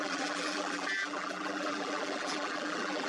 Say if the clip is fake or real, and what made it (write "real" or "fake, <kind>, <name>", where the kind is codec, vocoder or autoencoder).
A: fake, vocoder, BigVGAN v2